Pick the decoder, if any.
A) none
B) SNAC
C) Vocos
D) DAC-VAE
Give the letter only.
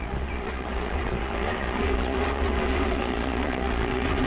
C